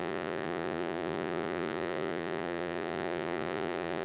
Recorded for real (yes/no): no